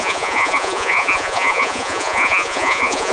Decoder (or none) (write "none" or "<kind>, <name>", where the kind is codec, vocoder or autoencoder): vocoder, Vocos